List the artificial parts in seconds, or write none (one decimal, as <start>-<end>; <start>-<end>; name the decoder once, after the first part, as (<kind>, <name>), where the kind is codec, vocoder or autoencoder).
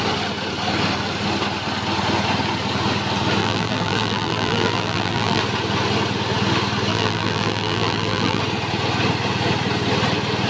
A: 3.4-5.4 (vocoder, BigVGAN v2); 6.9-8.4